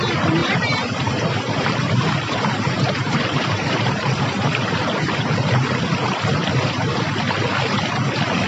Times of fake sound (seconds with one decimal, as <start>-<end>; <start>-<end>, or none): 0.4-4.2